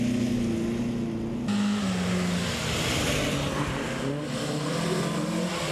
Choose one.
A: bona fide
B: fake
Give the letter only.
A